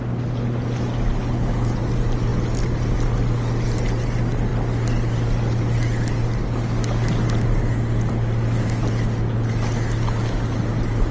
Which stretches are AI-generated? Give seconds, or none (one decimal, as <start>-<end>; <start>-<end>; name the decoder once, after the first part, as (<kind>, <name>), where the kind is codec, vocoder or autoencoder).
1.2-1.8 (codec, HILCodec)